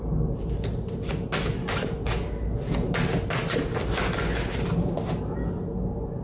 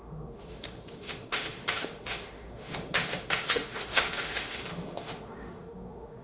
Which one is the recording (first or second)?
first